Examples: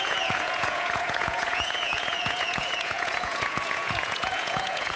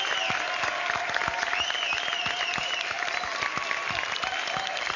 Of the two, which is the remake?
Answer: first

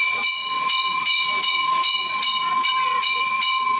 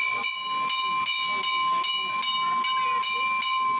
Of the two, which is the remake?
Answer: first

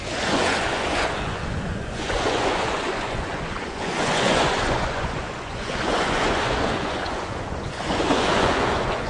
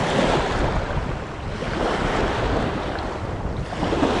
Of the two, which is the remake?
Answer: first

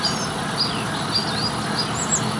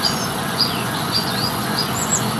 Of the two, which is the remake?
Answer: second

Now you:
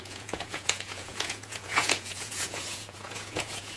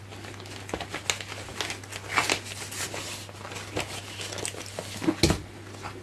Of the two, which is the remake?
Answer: first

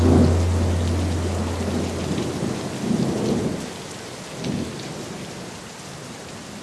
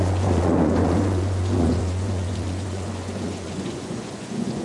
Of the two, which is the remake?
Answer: second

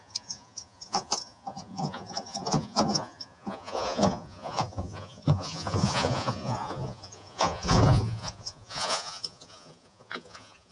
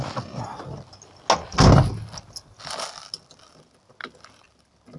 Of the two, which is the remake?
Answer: first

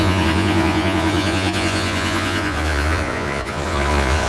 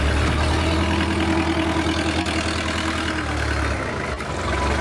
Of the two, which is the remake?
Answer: first